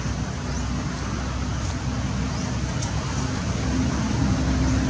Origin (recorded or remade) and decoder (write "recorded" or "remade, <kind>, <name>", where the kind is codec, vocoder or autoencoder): recorded